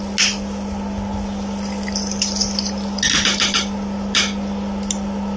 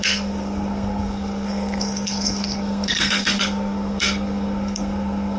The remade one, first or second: second